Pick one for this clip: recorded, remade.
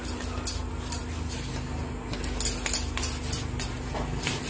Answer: recorded